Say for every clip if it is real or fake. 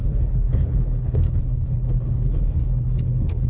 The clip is fake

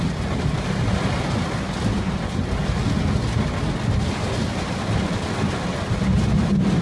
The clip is real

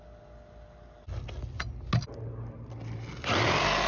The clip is real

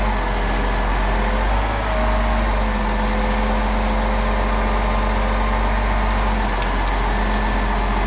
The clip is real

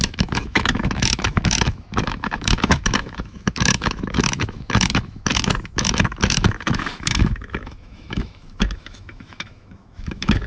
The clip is fake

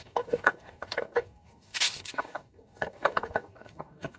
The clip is fake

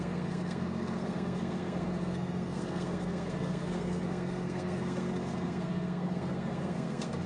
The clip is fake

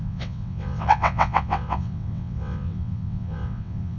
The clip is fake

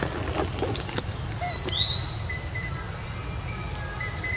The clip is real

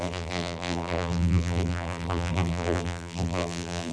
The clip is fake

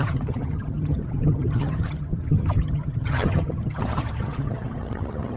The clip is fake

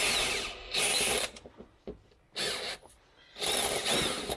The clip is real